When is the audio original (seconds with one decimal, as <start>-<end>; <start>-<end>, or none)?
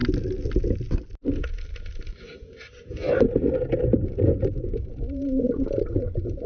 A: 0.0-1.2